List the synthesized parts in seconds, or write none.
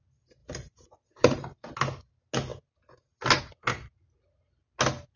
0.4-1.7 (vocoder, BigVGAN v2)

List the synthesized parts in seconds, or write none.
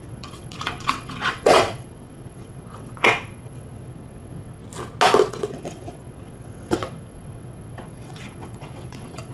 0.0-4.6 (vocoder, WaveNeXt); 5.3-9.3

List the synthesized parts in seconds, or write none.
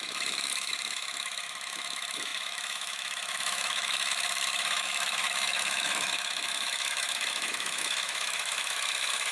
0.0-9.3 (autoencoder, DAC-VAE)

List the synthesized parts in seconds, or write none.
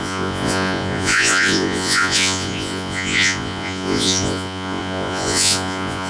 0.0-6.1 (vocoder, Vocos)